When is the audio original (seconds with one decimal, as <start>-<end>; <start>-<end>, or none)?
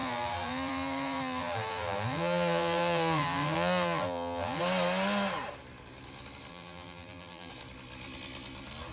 4.6-6.5; 7.5-8.9